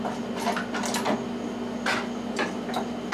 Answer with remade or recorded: recorded